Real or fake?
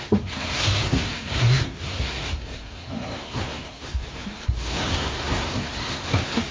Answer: fake